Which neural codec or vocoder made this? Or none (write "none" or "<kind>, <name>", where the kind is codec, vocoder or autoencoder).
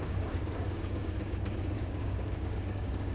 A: codec, DAC